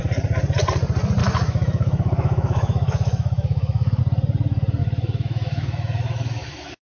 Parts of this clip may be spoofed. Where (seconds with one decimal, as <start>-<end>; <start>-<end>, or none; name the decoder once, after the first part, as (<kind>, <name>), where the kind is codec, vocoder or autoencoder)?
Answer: 1.2-4.0 (autoencoder, DAC-VAE); 4.8-6.9